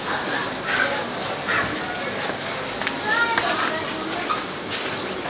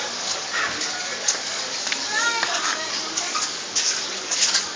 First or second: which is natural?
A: first